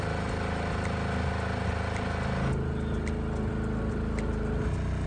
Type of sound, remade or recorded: recorded